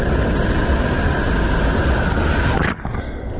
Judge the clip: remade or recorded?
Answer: recorded